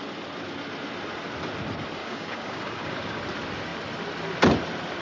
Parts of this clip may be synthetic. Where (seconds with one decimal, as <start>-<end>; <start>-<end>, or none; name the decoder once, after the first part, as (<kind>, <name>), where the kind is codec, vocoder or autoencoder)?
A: 2.0-3.2 (codec, DAC)